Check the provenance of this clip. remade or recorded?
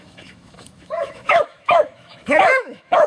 remade